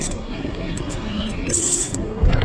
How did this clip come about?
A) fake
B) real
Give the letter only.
A